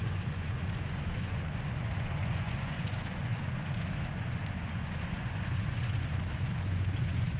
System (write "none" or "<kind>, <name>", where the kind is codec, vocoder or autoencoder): vocoder, Vocos